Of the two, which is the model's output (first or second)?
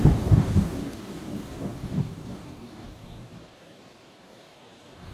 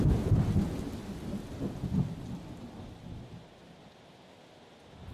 first